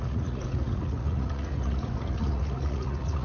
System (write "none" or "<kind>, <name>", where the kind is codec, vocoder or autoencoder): vocoder, Vocos